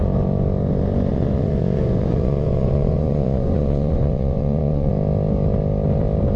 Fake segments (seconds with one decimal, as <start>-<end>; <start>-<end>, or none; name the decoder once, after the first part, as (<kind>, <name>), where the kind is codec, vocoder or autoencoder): 1.1-4.9 (vocoder, Vocos)